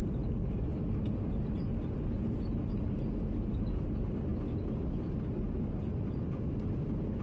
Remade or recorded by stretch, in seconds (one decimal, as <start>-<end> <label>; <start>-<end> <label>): 0.0-7.2 recorded